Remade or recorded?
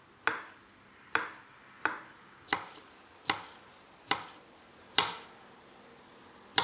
recorded